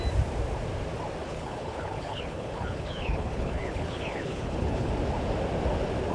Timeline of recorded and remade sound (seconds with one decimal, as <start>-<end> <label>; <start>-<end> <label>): 0.0-1.2 recorded; 1.2-4.9 remade; 4.9-6.1 recorded